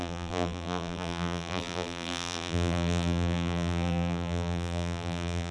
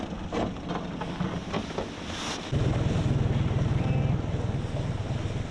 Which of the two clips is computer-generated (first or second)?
first